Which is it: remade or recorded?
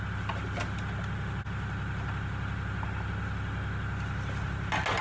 recorded